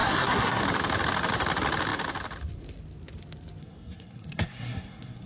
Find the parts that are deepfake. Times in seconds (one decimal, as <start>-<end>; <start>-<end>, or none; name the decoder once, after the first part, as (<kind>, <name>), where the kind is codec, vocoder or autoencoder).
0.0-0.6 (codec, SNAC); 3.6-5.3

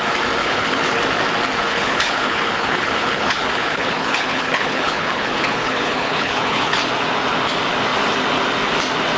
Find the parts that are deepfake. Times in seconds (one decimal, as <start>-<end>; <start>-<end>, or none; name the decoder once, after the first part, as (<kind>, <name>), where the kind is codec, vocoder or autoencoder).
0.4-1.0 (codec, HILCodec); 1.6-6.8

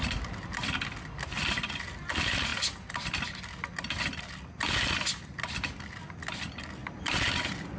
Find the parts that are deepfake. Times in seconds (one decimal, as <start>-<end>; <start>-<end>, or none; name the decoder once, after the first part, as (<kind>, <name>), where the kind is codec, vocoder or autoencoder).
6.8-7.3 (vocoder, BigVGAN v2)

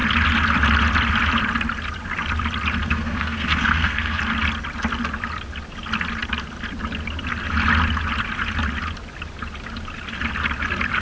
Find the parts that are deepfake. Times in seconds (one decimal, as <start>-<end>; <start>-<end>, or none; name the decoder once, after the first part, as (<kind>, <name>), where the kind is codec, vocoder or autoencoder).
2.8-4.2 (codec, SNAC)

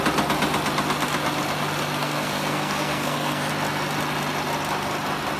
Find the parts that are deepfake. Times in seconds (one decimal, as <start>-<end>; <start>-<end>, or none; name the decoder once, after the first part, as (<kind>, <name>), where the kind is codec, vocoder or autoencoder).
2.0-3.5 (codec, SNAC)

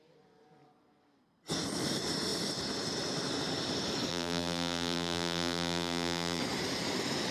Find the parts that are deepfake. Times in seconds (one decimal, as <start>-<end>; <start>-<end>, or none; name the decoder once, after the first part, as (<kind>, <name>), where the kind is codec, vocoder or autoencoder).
4.1-6.4 (vocoder, BigVGAN v2)

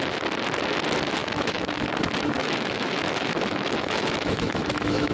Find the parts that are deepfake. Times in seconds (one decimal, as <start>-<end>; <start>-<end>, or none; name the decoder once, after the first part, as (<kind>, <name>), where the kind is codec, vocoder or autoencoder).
1.2-1.9 (autoencoder, DAC-VAE); 2.4-5.1

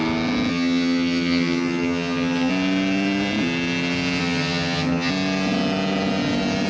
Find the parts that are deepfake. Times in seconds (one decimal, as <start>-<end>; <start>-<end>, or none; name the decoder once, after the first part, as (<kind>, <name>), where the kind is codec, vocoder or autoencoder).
0.5-2.5 (vocoder, HiFi-GAN); 4.2-5.1